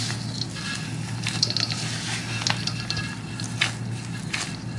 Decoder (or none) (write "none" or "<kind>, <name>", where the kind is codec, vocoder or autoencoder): none